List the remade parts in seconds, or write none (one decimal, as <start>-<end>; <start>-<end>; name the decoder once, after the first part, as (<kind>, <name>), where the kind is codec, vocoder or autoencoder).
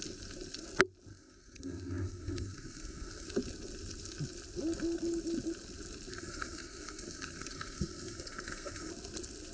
1.1-3.3 (codec, SNAC); 6.1-8.9